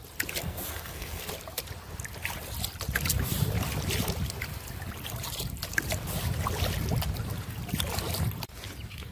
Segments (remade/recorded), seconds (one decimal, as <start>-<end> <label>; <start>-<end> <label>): 0.0-0.4 recorded; 0.4-1.3 remade; 1.3-9.1 recorded